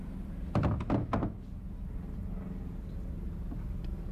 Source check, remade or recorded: recorded